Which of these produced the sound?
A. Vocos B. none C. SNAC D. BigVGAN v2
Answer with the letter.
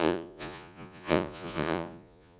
A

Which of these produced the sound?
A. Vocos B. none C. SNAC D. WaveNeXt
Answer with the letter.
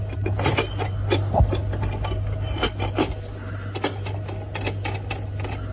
B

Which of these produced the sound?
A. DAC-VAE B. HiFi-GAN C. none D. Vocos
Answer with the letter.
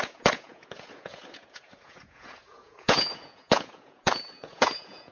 D